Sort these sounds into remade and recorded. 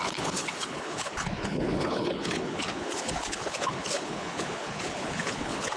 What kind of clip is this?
remade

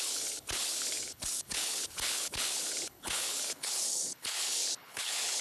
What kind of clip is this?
remade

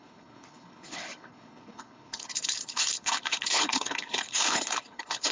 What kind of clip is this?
remade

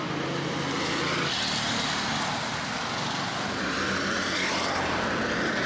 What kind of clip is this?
recorded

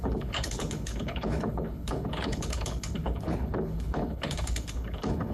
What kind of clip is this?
remade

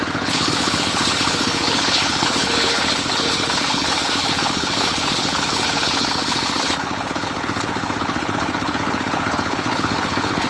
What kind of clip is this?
remade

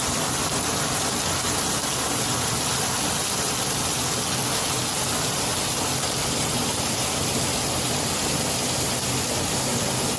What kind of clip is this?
recorded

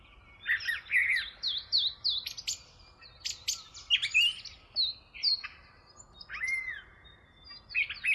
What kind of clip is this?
recorded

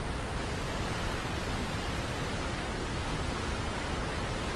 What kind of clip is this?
recorded